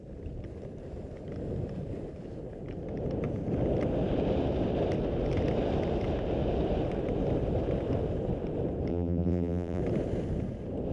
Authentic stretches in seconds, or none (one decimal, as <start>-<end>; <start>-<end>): 0.0-8.9; 9.8-10.9